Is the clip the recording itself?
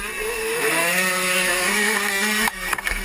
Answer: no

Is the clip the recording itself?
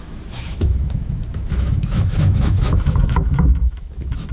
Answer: no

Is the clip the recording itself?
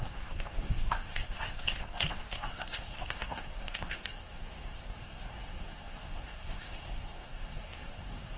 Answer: no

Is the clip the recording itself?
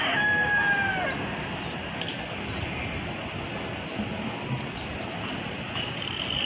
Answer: yes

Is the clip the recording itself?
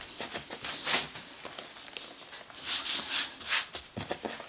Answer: yes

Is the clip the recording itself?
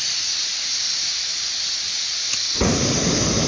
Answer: yes